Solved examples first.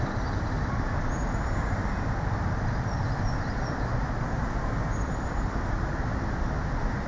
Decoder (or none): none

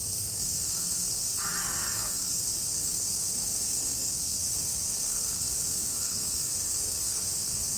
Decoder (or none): codec, SNAC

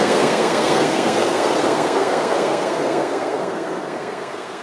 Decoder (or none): codec, SNAC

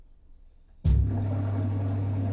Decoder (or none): none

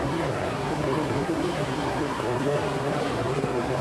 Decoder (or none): codec, SNAC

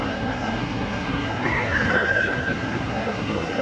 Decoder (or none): codec, SNAC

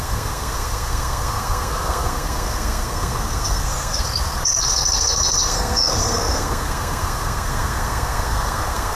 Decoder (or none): codec, SNAC